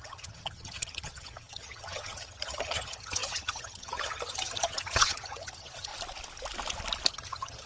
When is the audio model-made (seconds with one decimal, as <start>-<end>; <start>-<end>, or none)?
0.0-5.9; 7.1-7.7